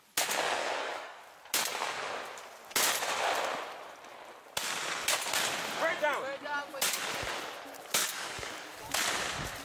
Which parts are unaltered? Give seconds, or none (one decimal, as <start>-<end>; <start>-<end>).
0.0-0.6; 1.2-8.0; 8.8-9.6